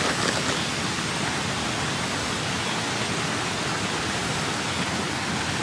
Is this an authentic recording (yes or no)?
yes